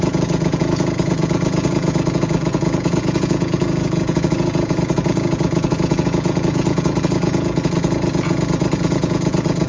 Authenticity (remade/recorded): remade